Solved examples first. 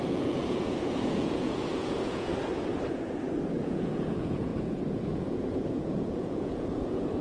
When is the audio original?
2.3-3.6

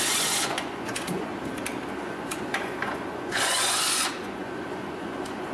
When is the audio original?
1.3-2.0

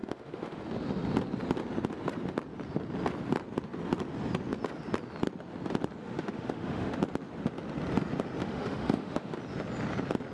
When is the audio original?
0.6-6.0; 7.0-8.4; 9.4-10.3

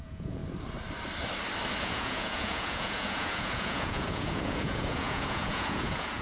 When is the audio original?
0.4-1.8

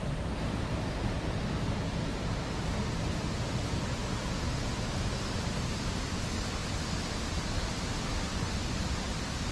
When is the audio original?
0.0-8.3; 8.8-9.5

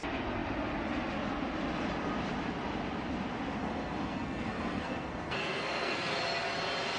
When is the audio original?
0.0-3.6; 6.2-7.0

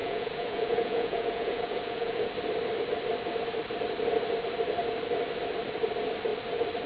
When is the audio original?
2.3-6.9

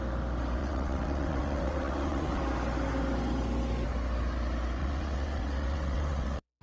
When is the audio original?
0.0-0.6; 2.4-4.8